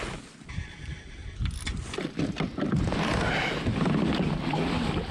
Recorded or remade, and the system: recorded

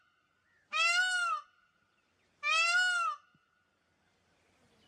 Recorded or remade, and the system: recorded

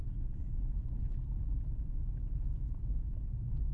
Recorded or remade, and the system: remade, vocoder, Vocos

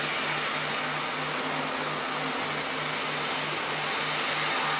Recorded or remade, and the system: recorded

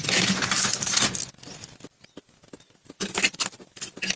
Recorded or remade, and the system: recorded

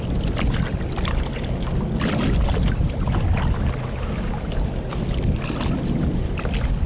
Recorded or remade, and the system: recorded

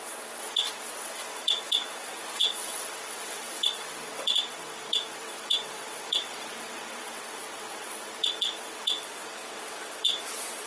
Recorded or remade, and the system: remade, vocoder, WaveNeXt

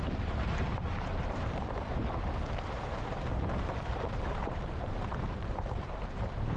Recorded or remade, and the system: remade, vocoder, BigVGAN v2